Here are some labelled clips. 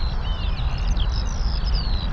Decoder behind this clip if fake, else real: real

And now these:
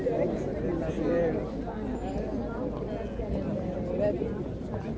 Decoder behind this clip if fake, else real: real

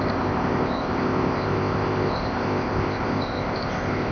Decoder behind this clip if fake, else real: fake, codec, ZipCodec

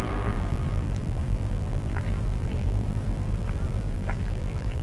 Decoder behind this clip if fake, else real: fake, vocoder, BigVGAN v2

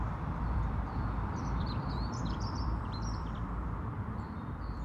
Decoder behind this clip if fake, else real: fake, vocoder, BigVGAN v2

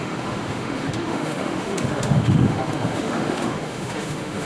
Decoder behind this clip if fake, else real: fake, autoencoder, DAC-VAE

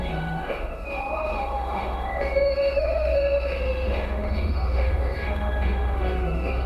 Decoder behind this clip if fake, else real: fake, autoencoder, DAC-VAE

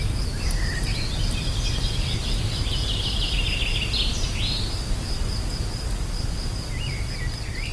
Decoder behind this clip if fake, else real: real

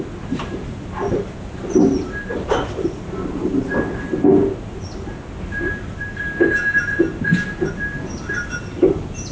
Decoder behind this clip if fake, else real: real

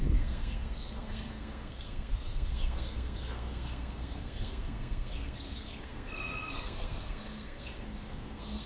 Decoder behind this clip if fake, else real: fake, codec, SNAC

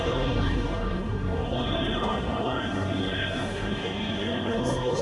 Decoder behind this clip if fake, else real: fake, codec, SNAC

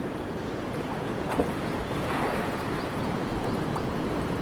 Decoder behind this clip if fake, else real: fake, vocoder, Vocos